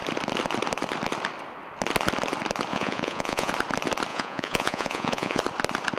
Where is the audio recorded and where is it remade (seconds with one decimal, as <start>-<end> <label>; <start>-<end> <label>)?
0.0-2.7 recorded; 2.7-3.5 remade; 3.5-4.1 recorded; 4.1-5.4 remade; 5.4-6.0 recorded

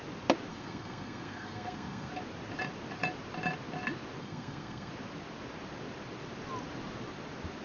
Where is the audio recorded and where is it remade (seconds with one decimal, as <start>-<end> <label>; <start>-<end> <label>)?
0.0-0.5 recorded; 0.5-2.1 remade; 2.1-4.2 recorded; 4.2-4.9 remade; 4.9-7.6 recorded

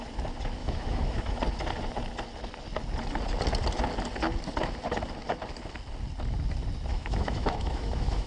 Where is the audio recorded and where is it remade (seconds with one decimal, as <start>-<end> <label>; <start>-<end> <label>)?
0.0-0.6 recorded; 0.6-1.4 remade; 1.4-6.9 recorded; 6.9-8.3 remade